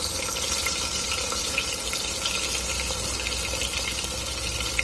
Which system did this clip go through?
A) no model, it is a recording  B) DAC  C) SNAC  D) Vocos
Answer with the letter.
A